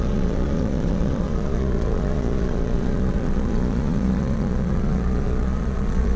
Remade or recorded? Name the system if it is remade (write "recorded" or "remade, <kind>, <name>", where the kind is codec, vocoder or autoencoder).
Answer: remade, vocoder, Vocos